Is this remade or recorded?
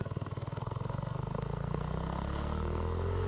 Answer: remade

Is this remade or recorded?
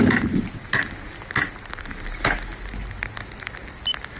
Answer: recorded